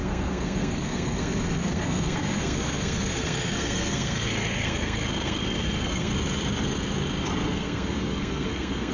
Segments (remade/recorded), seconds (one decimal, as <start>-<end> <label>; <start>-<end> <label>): 0.0-6.1 remade; 6.1-7.5 recorded; 7.5-8.9 remade

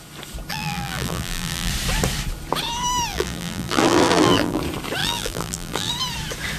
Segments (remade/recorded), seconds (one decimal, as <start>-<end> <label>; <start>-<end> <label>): 0.0-0.5 recorded; 0.5-1.7 remade; 1.7-3.1 recorded; 3.1-4.6 remade; 4.6-5.0 recorded; 5.0-5.9 remade; 5.9-6.6 recorded

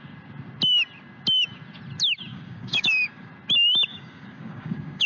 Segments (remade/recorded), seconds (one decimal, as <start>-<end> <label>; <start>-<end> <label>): 0.0-2.3 recorded; 2.3-3.3 remade; 3.3-3.9 recorded; 3.9-5.1 remade

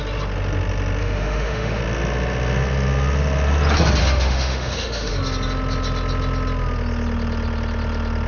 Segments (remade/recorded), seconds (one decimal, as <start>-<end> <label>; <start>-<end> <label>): 0.0-1.0 recorded; 1.0-1.8 remade; 1.8-4.0 recorded; 4.0-5.1 remade; 5.1-8.3 recorded

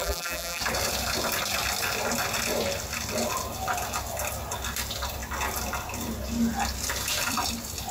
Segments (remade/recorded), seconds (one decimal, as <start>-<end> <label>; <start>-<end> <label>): 0.0-0.6 remade; 0.6-7.9 recorded